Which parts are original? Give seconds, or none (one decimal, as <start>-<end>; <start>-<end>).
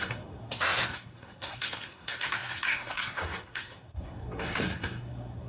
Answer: none